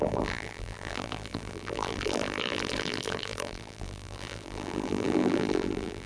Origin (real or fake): fake